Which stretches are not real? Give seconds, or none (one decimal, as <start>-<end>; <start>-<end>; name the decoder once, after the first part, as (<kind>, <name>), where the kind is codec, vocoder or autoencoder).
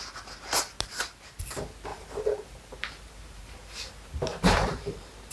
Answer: 1.9-5.3 (vocoder, BigVGAN v2)